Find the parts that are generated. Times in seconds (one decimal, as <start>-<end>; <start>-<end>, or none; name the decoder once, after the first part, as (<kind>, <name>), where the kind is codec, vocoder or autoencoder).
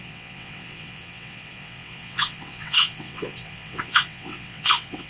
0.0-5.1 (vocoder, WaveNeXt)